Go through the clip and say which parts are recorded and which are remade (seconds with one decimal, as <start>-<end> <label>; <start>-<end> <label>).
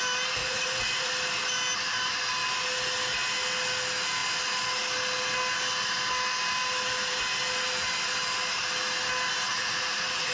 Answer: 0.0-0.4 recorded; 0.4-1.1 remade; 1.1-9.5 recorded; 9.5-10.3 remade